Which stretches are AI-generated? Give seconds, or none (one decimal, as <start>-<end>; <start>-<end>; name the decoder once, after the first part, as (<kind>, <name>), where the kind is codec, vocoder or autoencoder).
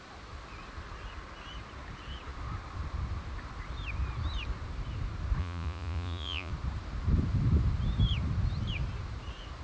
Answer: 5.4-6.5 (vocoder, Vocos)